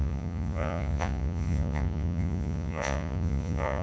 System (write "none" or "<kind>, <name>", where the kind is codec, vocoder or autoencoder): vocoder, Vocos